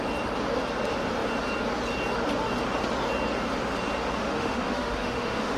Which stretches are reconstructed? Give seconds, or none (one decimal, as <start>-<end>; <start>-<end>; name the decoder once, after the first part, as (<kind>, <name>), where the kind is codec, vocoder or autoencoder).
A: 4.2-5.6 (autoencoder, DAC-VAE)